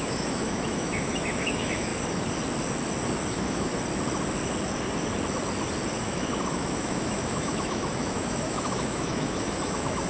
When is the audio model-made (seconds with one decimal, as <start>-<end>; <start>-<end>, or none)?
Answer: 0.0-1.9; 3.3-3.7; 6.0-10.1